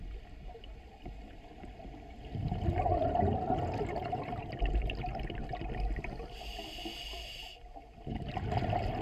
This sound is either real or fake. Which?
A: real